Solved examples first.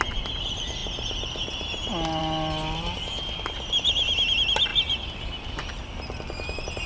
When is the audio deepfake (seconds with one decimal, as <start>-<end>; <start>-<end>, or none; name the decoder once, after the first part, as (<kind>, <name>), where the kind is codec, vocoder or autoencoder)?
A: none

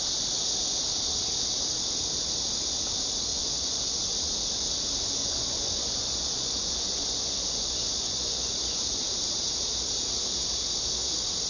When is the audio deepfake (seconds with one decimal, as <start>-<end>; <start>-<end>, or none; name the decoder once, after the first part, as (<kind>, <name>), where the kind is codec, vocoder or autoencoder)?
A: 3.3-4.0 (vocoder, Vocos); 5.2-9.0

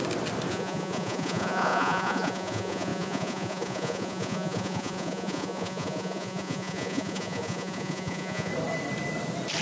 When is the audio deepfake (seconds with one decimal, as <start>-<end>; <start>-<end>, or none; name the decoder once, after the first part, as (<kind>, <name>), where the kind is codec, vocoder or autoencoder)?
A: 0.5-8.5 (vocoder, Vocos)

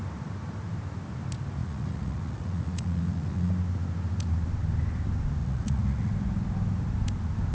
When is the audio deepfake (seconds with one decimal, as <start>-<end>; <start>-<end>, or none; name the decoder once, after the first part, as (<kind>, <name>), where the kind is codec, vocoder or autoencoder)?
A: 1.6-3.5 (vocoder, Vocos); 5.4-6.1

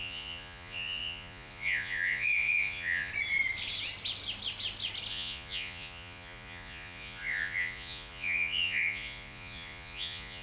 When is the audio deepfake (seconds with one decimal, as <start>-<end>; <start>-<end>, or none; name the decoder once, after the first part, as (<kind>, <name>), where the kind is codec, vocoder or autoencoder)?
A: 0.0-3.1 (vocoder, Vocos); 5.1-10.4

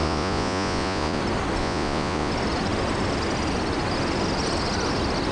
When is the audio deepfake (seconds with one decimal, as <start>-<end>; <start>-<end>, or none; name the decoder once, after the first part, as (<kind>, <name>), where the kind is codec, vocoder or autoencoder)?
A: 0.0-1.2 (vocoder, Vocos); 1.6-2.3